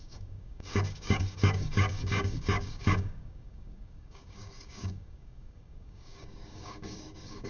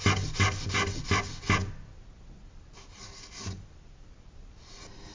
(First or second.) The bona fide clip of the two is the second